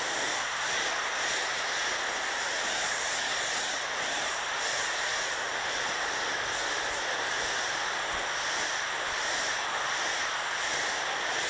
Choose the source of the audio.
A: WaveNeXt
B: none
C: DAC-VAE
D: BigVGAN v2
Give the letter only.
B